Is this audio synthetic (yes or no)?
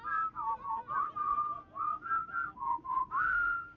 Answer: no